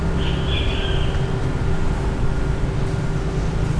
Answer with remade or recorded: recorded